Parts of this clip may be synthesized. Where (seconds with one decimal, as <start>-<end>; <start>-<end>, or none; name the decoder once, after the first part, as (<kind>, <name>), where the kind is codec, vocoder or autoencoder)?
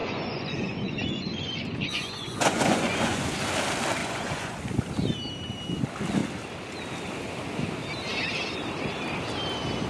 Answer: 0.0-3.3 (vocoder, Vocos); 4.0-4.6